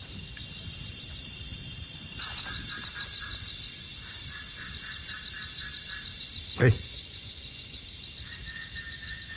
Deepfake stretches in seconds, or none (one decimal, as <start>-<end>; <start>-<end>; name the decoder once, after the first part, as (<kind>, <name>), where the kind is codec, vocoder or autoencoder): 6.6-7.8 (vocoder, Vocos)